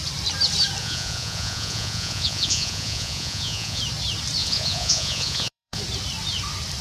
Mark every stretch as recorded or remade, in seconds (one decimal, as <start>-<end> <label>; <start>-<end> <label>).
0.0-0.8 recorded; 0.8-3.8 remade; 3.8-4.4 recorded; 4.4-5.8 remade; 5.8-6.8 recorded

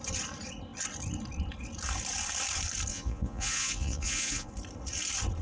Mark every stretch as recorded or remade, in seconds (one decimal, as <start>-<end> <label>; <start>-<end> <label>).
0.0-2.9 recorded; 2.9-4.5 remade; 4.5-5.4 recorded

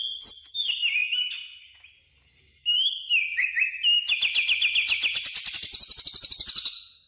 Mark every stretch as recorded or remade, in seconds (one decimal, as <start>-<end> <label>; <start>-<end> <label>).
0.0-7.1 recorded